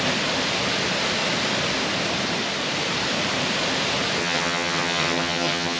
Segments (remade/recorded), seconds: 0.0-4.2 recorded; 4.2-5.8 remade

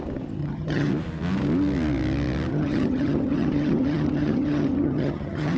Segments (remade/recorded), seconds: 0.0-0.4 recorded; 0.4-0.9 remade; 0.9-2.5 recorded; 2.5-5.6 remade

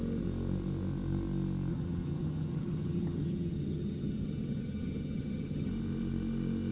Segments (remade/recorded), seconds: 0.0-1.7 recorded; 1.7-5.7 remade; 5.7-6.7 recorded